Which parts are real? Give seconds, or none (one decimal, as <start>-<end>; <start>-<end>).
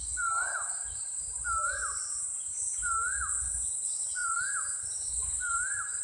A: 2.8-3.5